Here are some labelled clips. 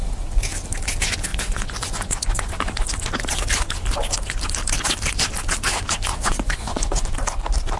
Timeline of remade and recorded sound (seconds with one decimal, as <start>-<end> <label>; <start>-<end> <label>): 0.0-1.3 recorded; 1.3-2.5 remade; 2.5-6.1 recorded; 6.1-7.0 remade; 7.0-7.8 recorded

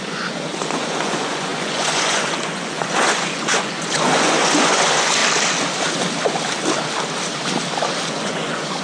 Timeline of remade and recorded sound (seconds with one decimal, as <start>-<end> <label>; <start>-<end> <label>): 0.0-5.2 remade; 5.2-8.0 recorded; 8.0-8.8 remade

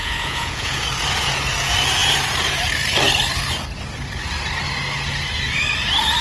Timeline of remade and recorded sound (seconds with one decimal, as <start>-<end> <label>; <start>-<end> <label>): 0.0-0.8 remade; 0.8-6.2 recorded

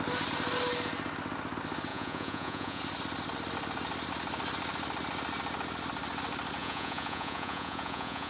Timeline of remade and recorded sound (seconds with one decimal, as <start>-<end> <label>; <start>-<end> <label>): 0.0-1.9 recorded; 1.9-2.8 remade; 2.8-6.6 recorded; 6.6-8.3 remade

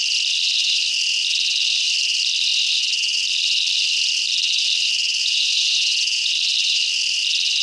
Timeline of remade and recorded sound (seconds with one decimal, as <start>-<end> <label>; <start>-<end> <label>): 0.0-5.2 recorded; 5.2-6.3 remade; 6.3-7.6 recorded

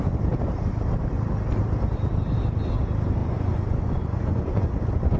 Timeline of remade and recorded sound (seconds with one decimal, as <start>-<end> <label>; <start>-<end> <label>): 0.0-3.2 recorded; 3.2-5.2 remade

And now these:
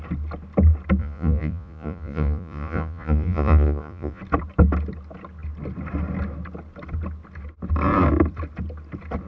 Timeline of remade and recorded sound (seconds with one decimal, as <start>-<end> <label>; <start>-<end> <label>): 0.0-1.0 recorded; 1.0-4.2 remade; 4.2-9.3 recorded